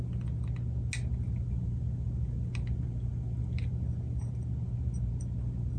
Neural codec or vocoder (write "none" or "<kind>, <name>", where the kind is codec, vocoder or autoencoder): none